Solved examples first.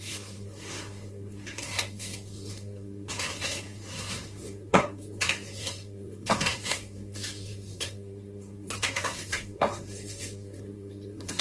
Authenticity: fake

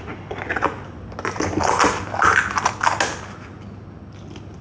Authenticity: real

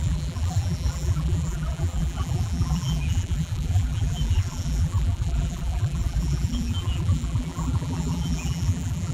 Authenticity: fake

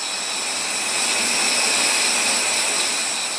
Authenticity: real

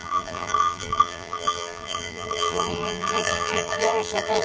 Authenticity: fake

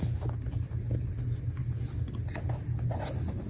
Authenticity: real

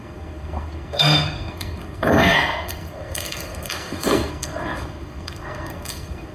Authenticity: fake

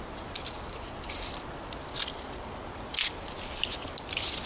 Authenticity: real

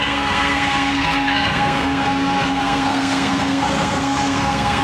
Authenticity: fake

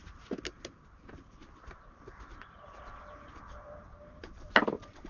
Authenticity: real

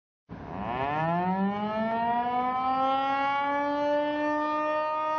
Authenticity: real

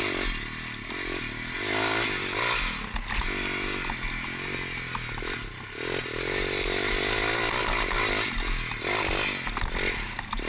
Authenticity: real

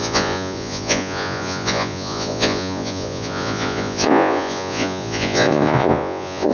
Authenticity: fake